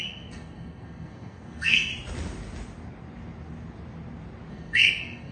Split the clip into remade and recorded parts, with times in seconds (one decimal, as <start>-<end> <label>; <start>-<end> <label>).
0.0-1.9 remade; 1.9-4.5 recorded; 4.5-5.3 remade